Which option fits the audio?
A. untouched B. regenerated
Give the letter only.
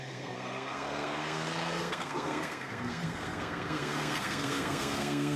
B